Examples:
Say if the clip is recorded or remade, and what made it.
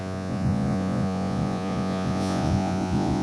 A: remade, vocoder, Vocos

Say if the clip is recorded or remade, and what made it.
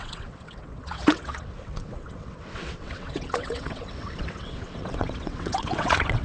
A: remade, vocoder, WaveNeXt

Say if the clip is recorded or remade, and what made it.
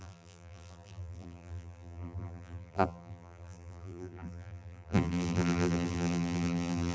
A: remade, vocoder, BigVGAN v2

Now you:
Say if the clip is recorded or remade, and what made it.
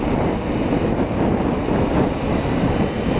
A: recorded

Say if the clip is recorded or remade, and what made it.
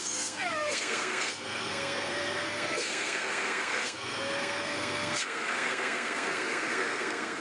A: remade, codec, SNAC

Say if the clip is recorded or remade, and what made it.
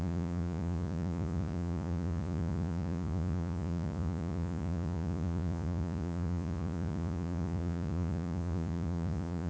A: remade, vocoder, Vocos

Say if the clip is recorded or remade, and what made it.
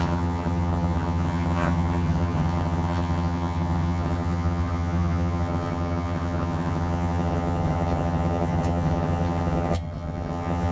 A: remade, vocoder, HiFi-GAN